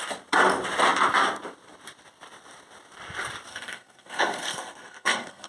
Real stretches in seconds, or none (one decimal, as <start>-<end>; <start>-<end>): 0.0-3.5